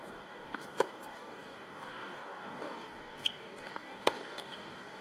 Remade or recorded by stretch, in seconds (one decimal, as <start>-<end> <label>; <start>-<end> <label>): 0.0-5.0 remade